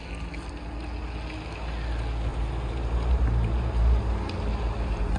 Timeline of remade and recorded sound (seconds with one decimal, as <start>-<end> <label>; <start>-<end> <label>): 0.0-2.3 recorded; 2.3-4.0 remade; 4.0-5.2 recorded